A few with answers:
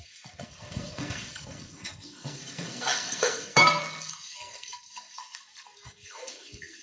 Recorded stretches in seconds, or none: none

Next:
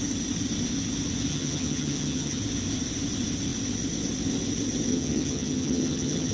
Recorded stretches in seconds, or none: 0.0-1.3; 2.4-4.9

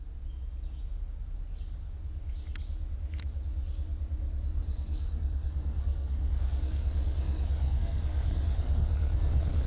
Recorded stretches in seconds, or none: 0.0-4.6

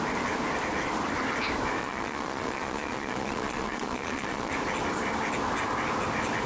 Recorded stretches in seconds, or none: 0.0-1.8; 4.5-6.5

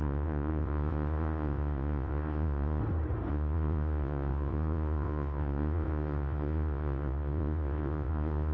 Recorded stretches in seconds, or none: 2.8-3.3